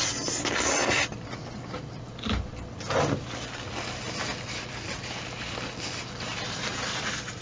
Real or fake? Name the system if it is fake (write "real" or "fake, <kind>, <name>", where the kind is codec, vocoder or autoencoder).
real